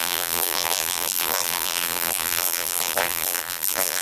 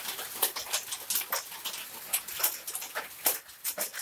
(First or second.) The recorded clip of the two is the second